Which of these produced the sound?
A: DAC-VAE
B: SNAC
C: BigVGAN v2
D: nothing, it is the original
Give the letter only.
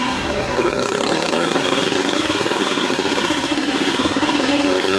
B